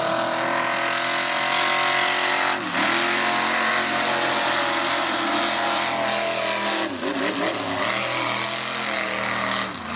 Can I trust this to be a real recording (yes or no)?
yes